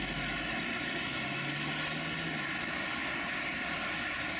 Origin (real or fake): real